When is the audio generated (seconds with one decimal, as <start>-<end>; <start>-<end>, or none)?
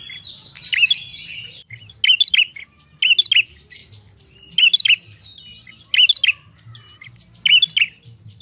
none